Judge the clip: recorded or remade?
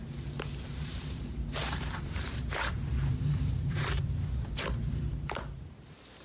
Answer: remade